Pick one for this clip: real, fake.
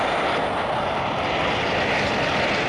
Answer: real